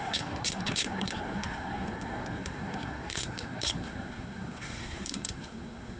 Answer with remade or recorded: remade